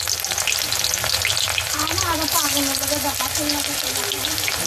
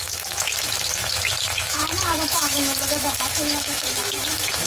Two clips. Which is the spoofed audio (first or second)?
second